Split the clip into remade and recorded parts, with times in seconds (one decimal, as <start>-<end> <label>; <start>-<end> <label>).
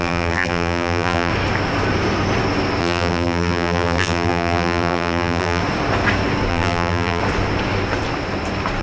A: 0.0-1.3 remade; 1.3-2.8 recorded; 2.8-5.6 remade; 5.6-6.5 recorded; 6.5-7.2 remade; 7.2-8.8 recorded